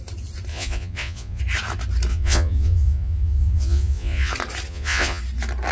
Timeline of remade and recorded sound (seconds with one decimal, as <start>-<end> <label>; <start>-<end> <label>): 0.0-0.5 recorded; 0.5-1.4 remade; 1.4-2.1 recorded; 2.1-4.3 remade; 4.3-4.7 recorded; 4.7-5.2 remade; 5.2-5.7 recorded